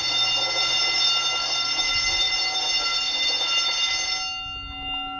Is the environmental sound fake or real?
real